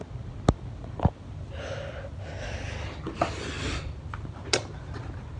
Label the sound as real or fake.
real